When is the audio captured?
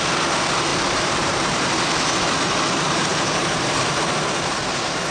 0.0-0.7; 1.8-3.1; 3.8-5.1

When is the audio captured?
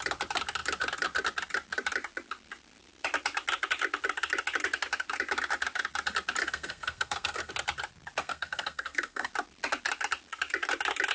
0.0-6.4; 7.5-8.2; 9.3-11.1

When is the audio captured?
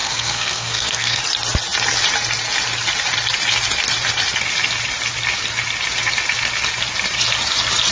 1.2-7.9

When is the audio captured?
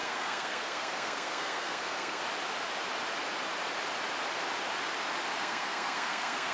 2.2-5.4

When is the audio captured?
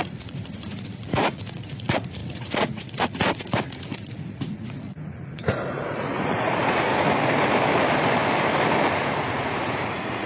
6.9-9.3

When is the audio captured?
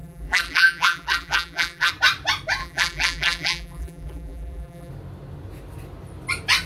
1.9-2.6; 4.9-6.7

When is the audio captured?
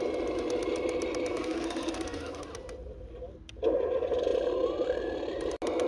0.0-1.3; 2.4-5.9